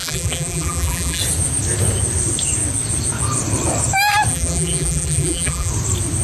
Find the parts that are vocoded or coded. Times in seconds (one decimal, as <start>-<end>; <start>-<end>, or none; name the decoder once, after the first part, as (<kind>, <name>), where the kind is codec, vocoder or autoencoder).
0.0-1.2 (vocoder, BigVGAN v2); 4.3-5.7